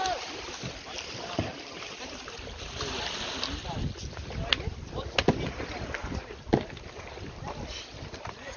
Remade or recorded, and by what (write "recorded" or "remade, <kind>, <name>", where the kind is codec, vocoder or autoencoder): recorded